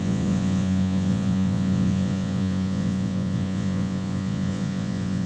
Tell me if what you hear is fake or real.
fake